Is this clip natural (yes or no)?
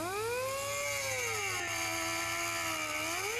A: yes